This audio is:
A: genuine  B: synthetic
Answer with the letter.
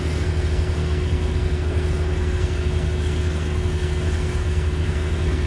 B